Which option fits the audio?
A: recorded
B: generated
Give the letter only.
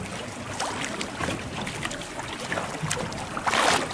A